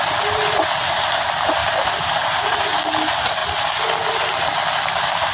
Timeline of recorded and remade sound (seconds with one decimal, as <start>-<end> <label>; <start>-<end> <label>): 0.0-1.6 recorded; 1.6-2.6 remade; 2.6-5.3 recorded